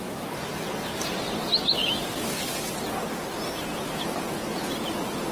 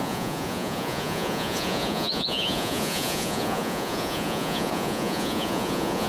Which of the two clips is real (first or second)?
first